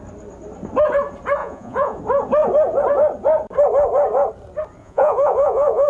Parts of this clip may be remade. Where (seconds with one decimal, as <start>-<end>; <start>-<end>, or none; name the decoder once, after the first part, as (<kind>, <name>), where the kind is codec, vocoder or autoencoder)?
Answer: 1.4-2.0 (vocoder, Vocos); 4.8-5.9